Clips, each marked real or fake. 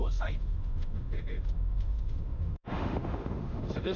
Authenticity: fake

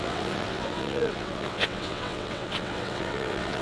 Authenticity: fake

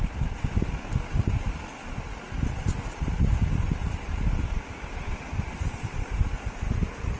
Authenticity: real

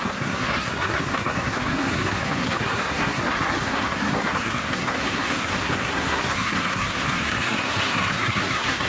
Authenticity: fake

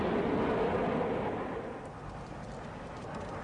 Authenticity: real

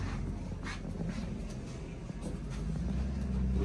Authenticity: real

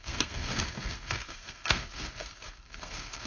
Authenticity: fake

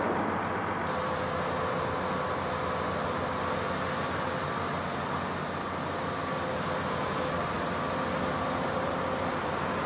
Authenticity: real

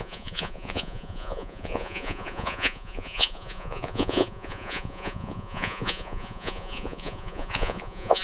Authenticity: fake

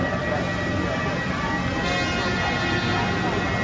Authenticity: real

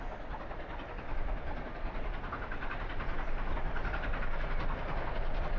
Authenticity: real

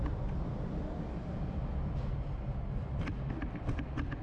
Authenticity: real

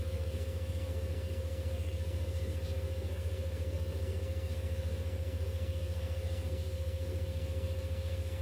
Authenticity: fake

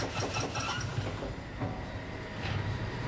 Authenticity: real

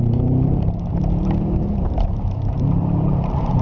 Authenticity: fake